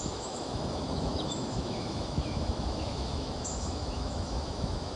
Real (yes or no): no